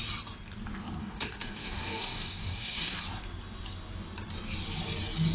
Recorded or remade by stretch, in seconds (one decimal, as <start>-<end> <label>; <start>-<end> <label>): 0.0-1.0 recorded; 1.0-3.0 remade; 3.0-5.3 recorded